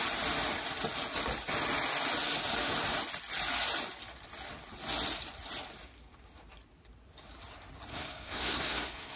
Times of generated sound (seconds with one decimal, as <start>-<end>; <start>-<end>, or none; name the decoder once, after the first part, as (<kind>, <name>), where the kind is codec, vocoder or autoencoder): 7.9-9.2 (codec, SNAC)